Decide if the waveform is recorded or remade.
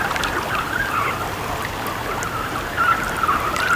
recorded